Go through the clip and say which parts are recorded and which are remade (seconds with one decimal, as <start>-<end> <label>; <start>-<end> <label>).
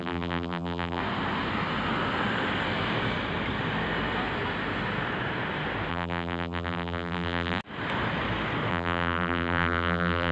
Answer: 0.0-1.0 remade; 1.0-5.9 recorded; 5.9-7.6 remade; 7.6-8.7 recorded; 8.7-10.3 remade